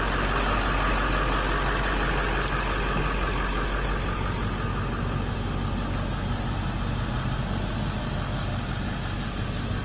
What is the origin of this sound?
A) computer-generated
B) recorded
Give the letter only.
B